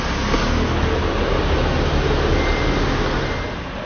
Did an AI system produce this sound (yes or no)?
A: no